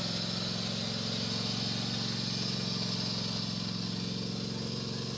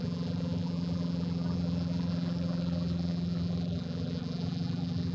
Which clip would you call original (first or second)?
first